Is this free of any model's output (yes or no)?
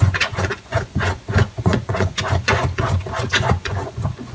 no